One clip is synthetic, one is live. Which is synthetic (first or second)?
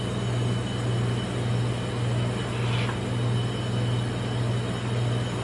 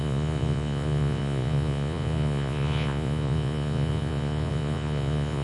second